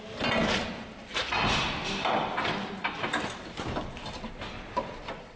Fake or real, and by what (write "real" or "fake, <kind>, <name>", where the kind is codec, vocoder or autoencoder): real